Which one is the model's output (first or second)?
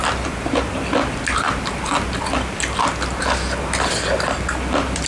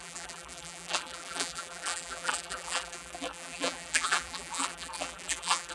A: second